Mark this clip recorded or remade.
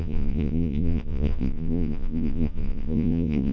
remade